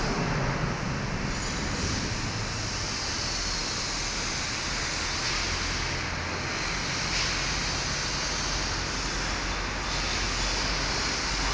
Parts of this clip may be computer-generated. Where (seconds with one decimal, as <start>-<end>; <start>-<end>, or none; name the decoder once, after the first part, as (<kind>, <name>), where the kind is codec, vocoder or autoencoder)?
none